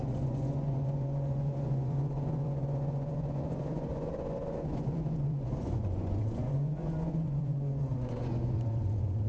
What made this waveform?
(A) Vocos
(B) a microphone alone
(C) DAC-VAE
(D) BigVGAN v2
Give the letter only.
A